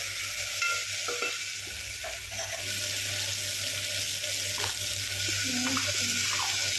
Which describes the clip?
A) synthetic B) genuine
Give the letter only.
B